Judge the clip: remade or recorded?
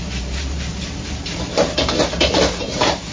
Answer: remade